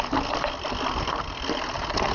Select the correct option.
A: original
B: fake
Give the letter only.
A